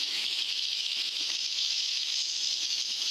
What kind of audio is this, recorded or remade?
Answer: remade